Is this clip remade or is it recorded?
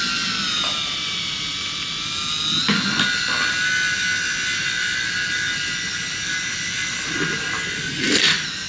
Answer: recorded